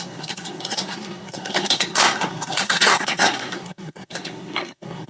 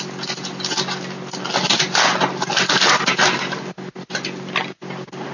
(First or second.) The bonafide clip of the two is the second